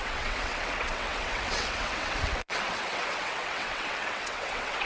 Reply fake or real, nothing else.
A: fake